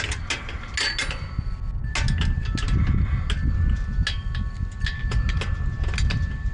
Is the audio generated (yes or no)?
no